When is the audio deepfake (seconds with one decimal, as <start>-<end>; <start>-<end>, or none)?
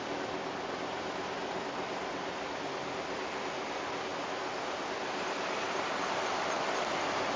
none